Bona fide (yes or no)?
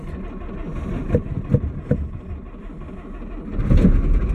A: yes